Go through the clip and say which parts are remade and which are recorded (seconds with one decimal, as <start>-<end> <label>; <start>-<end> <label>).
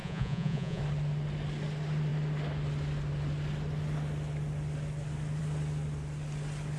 0.0-0.8 remade; 0.8-6.8 recorded